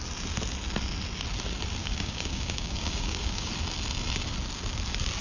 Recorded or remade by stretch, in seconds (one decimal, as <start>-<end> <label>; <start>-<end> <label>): 0.0-1.8 recorded; 1.8-3.5 remade; 3.5-5.2 recorded